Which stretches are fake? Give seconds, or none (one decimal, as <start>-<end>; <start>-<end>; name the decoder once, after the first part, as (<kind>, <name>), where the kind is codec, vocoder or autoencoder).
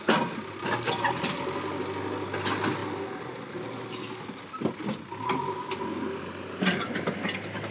none